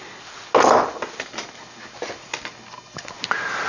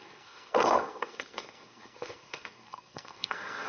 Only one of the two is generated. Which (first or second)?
second